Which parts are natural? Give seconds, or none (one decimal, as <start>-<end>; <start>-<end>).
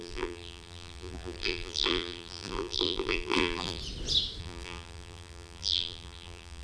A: 3.8-4.4